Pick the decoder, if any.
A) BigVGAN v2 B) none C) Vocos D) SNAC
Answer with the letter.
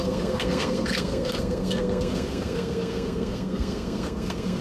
D